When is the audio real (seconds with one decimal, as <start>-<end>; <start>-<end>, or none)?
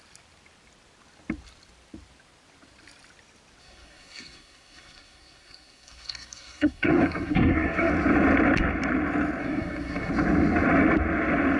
0.0-3.6; 7.9-9.4; 10.1-11.6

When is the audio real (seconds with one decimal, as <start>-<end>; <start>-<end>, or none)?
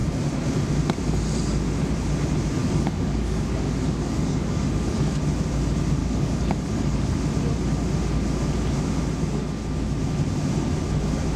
0.0-2.6; 5.2-6.0; 7.1-11.4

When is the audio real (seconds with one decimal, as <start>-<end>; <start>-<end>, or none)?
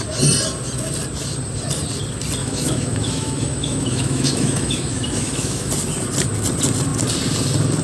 0.0-2.4; 5.7-7.8